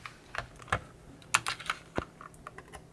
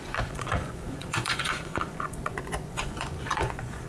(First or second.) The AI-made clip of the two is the second